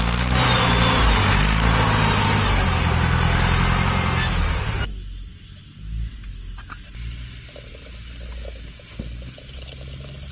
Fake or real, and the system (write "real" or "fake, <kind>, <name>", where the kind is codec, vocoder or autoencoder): real